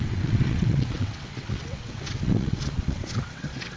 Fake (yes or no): yes